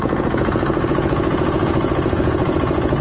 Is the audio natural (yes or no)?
no